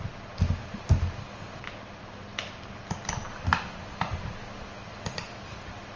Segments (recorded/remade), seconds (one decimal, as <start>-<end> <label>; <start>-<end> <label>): 0.0-6.0 recorded